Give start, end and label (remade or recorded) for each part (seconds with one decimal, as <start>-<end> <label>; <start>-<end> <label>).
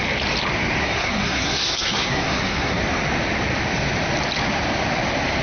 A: 0.0-0.8 recorded; 0.8-2.8 remade; 2.8-5.4 recorded